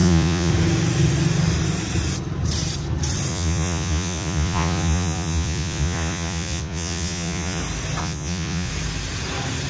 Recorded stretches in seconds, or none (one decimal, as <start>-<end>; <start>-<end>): 0.5-3.3; 7.6-8.0; 8.7-9.7